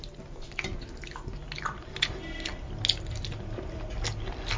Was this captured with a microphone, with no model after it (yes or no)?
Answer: yes